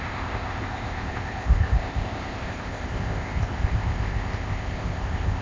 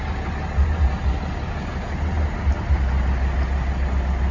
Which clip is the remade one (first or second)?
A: first